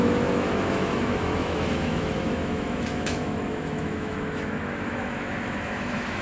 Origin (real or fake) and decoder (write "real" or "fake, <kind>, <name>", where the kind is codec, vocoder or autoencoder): fake, autoencoder, DAC-VAE